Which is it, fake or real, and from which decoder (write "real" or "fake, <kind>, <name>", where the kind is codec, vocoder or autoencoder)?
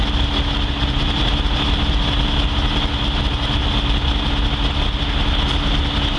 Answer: real